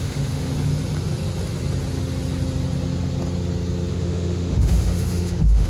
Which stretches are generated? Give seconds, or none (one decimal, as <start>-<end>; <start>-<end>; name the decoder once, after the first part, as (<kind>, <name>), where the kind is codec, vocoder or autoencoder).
0.0-0.5 (autoencoder, DAC-VAE); 3.9-5.7